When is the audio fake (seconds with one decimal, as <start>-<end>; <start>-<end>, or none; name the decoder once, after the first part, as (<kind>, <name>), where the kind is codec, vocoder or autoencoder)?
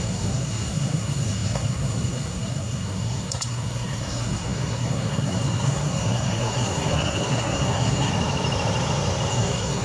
0.0-8.1 (codec, SNAC); 9.3-9.8